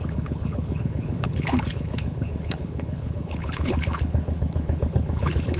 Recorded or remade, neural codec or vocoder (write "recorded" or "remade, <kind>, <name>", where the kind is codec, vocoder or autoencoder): remade, codec, HILCodec